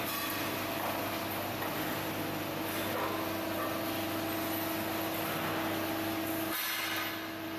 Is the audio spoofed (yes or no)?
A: no